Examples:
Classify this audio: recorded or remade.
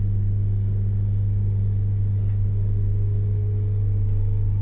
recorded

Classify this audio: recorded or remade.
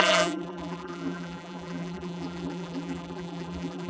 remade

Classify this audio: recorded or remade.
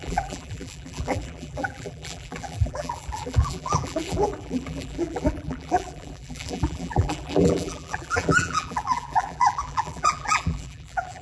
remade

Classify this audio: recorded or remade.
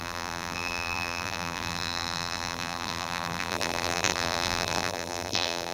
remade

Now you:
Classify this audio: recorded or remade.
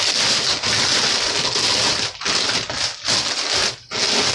recorded